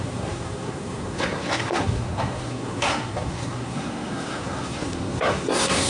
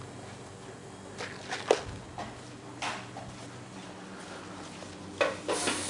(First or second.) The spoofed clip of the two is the first